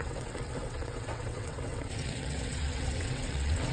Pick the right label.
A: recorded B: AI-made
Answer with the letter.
B